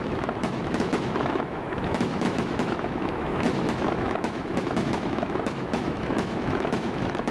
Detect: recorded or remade remade